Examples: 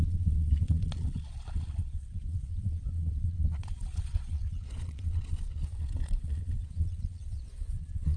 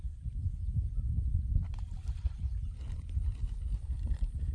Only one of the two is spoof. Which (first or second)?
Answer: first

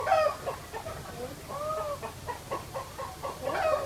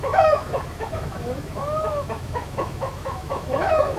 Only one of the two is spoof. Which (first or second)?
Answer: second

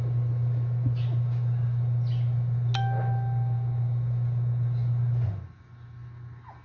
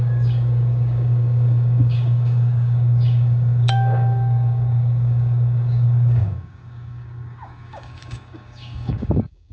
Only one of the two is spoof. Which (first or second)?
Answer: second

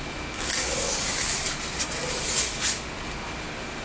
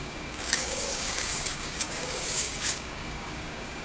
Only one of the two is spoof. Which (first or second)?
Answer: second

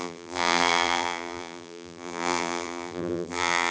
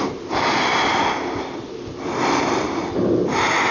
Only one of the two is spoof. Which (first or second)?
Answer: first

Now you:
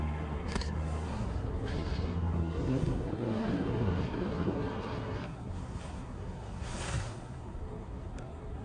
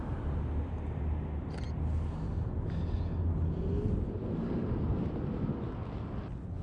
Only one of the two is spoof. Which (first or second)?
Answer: first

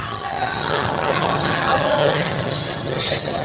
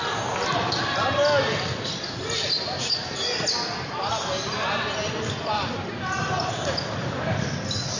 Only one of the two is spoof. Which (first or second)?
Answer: first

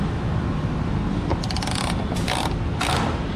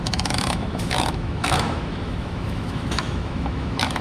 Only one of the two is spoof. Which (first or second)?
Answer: second